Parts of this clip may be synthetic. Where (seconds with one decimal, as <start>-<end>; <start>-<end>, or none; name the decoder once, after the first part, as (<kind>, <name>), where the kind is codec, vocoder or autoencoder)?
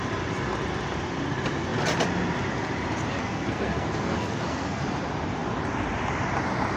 3.2-4.8 (codec, SNAC)